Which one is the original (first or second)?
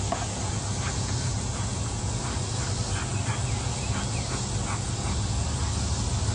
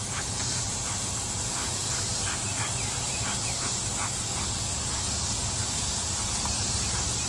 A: first